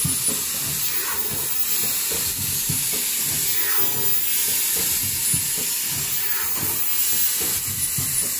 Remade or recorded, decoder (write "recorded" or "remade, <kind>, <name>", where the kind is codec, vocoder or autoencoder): recorded